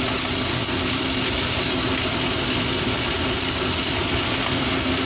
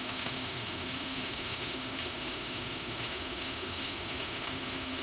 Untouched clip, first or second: first